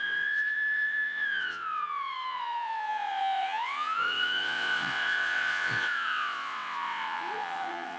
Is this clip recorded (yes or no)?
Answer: no